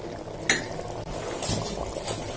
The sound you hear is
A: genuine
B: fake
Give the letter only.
A